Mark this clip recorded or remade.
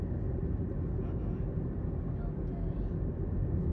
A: recorded